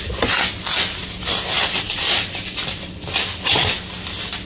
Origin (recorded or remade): recorded